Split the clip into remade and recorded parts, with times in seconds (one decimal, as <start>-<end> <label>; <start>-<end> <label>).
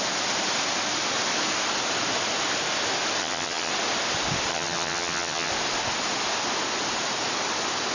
0.0-3.2 recorded; 3.2-3.7 remade; 3.7-4.5 recorded; 4.5-5.5 remade; 5.5-7.9 recorded